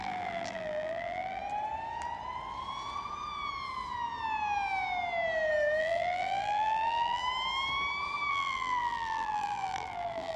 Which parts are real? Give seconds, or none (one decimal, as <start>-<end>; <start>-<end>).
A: 1.4-5.8; 7.2-8.3